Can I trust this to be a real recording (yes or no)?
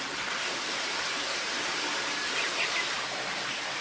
yes